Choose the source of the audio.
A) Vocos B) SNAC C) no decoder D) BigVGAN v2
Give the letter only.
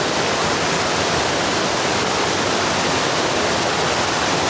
C